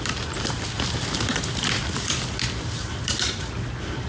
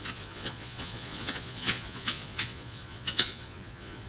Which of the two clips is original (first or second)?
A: first